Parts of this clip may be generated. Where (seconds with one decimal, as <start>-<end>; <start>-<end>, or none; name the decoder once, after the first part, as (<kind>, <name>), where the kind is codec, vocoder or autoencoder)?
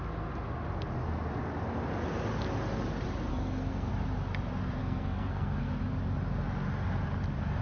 3.3-3.9 (codec, SNAC); 4.8-5.7